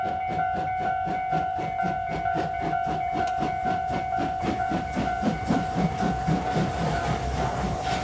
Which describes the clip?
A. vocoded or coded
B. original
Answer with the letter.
A